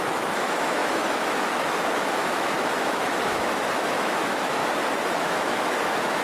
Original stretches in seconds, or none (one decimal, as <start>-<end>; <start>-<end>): 4.6-5.1